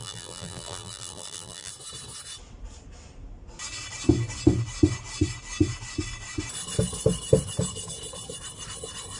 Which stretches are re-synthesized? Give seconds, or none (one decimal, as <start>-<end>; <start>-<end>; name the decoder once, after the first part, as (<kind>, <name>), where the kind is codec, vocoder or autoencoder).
0.0-1.7 (vocoder, BigVGAN v2)